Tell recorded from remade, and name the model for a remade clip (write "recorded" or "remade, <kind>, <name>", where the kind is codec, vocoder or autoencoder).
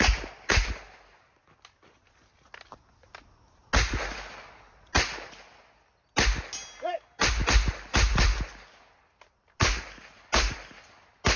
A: recorded